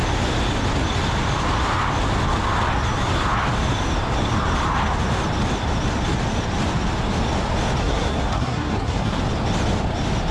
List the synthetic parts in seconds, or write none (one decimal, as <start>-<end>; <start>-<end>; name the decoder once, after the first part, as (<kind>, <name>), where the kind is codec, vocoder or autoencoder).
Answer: 7.8-9.2 (codec, SNAC)